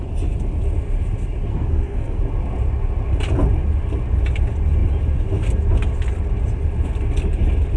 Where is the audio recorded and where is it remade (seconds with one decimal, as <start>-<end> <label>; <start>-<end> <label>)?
0.0-1.5 recorded; 1.5-2.2 remade; 2.2-7.8 recorded